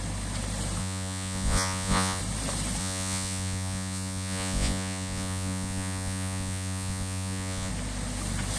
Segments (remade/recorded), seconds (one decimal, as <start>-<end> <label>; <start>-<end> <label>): 0.0-0.8 recorded; 0.8-2.2 remade; 2.2-2.8 recorded; 2.8-7.7 remade; 7.7-8.6 recorded